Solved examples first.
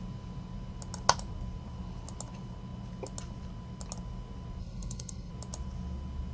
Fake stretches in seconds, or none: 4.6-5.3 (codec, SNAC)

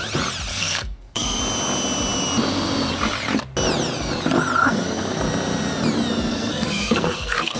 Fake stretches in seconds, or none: 0.5-1.4 (codec, SNAC); 4.6-5.2; 6.3-7.6

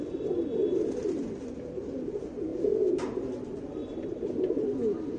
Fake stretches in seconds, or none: none

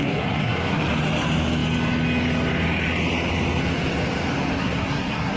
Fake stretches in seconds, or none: 0.0-0.8 (codec, SNAC); 4.5-5.4